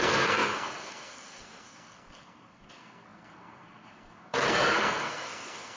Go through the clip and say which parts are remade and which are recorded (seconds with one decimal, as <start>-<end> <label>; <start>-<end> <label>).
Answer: 0.0-5.8 remade